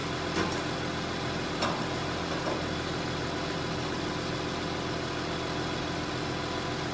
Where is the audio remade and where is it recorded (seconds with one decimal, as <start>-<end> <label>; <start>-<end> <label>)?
0.0-6.9 recorded